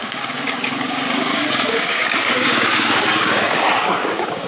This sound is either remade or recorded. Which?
remade